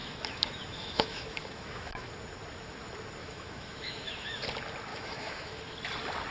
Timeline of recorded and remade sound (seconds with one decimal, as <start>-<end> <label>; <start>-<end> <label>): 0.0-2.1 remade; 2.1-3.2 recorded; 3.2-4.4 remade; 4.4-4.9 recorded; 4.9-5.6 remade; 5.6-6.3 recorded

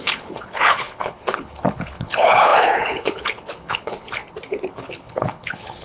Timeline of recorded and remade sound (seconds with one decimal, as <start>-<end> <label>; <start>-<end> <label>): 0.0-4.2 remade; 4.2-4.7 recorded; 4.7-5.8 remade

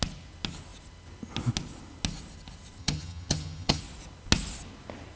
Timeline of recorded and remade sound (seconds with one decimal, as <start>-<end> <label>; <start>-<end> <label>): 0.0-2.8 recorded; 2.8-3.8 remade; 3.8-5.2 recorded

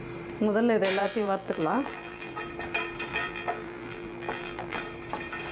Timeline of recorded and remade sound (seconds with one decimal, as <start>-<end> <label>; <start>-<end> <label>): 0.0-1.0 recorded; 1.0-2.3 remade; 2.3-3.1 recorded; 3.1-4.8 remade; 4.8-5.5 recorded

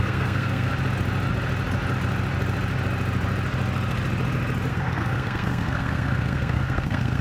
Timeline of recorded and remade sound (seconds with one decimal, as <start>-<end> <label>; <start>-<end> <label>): 0.0-0.7 remade; 0.7-4.7 recorded; 4.7-7.2 remade

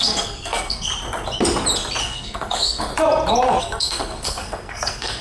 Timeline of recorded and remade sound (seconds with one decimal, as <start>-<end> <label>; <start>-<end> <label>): 0.0-0.9 remade; 0.9-2.0 recorded; 2.0-2.9 remade; 2.9-3.6 recorded; 3.6-5.2 remade

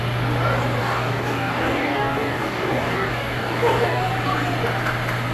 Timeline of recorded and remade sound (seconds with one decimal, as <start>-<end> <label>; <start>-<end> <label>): 0.0-0.8 recorded; 0.8-4.0 remade; 4.0-5.3 recorded

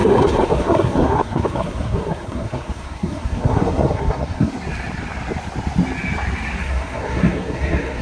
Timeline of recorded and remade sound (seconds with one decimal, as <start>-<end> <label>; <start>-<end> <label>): 0.0-4.5 remade; 4.5-6.6 recorded; 6.6-8.0 remade